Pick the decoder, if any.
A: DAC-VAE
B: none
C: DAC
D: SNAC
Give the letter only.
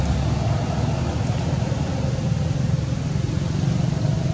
B